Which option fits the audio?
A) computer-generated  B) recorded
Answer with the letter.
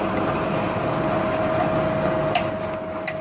B